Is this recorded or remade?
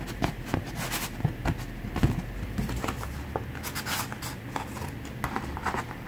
recorded